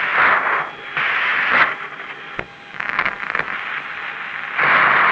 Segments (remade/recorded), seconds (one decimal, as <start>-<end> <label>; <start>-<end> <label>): 0.0-2.5 recorded; 2.5-3.1 remade; 3.1-5.1 recorded